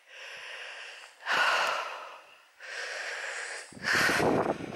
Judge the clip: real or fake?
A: real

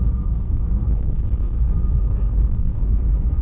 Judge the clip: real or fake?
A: fake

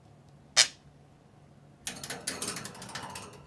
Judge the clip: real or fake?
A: real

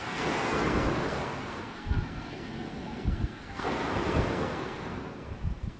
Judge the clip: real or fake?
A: fake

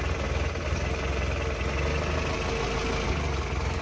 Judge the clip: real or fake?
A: real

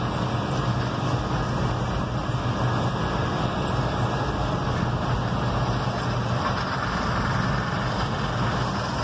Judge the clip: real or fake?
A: real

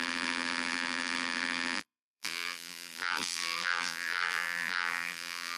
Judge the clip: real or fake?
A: fake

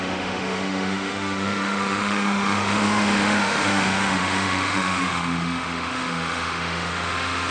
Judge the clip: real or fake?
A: fake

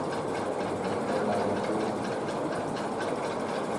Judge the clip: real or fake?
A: real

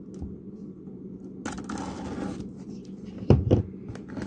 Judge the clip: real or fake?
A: real